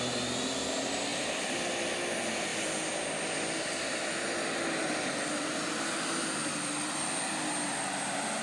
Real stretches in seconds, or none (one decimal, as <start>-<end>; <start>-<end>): 0.0-8.4